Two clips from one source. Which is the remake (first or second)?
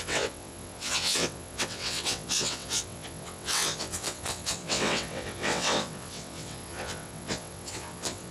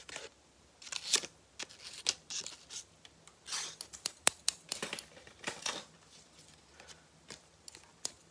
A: first